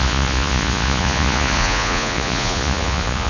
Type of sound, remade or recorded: remade